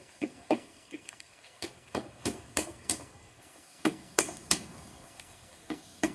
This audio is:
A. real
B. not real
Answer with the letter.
B